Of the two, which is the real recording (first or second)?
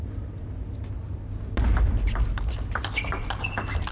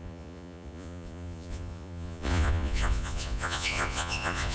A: first